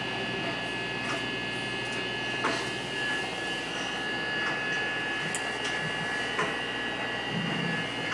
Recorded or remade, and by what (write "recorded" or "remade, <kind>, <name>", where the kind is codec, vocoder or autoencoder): recorded